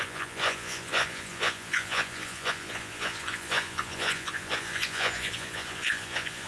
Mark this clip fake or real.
fake